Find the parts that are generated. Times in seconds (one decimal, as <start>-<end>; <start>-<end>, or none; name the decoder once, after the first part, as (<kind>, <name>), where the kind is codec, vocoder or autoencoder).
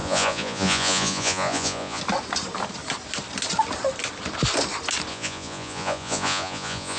0.0-2.0 (vocoder, Vocos); 5.1-7.0